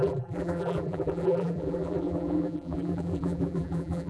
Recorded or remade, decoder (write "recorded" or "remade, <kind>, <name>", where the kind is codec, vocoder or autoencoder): remade, vocoder, BigVGAN v2